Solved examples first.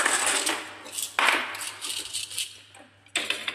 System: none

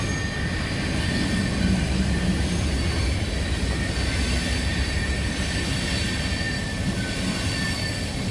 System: none